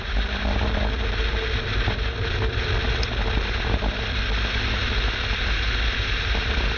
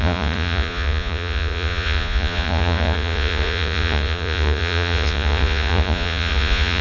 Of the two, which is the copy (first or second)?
second